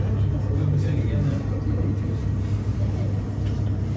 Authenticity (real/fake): real